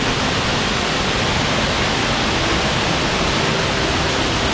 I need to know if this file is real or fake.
real